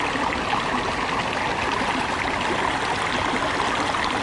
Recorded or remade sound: recorded